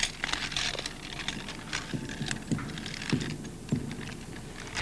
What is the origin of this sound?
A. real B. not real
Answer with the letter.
A